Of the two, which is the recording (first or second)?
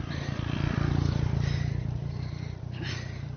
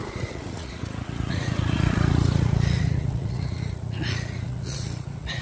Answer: first